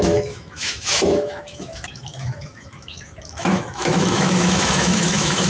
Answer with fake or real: fake